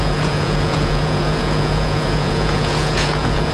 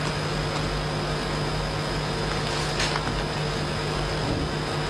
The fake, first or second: first